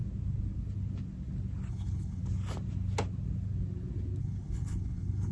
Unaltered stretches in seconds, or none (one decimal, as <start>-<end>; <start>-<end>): 0.0-1.7; 2.2-4.2